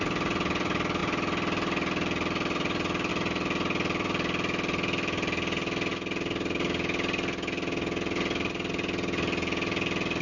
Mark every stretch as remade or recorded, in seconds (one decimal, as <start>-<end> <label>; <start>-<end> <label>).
0.0-10.2 recorded